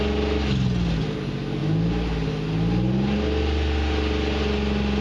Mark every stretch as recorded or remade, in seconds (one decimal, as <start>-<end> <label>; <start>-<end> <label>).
0.0-5.0 recorded